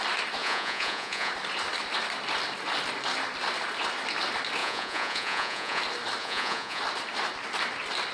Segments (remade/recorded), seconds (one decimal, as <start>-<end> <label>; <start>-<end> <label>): 0.0-0.4 recorded; 0.4-1.3 remade; 1.3-4.6 recorded; 4.6-5.8 remade; 5.8-6.2 recorded; 6.2-6.8 remade; 6.8-8.1 recorded